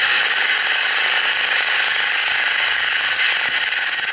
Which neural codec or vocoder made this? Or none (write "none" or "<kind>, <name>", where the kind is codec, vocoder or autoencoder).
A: codec, DAC